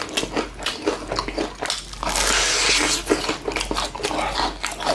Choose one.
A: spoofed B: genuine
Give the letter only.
B